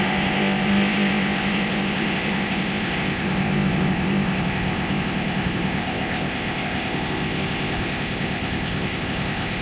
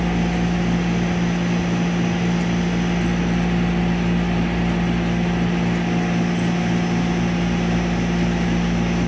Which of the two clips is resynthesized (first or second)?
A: first